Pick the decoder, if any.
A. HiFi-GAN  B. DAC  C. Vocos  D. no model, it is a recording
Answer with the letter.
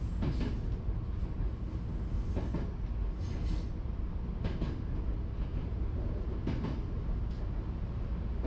D